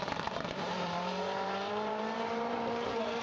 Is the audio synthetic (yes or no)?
yes